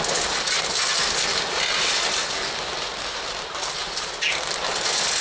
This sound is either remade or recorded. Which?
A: recorded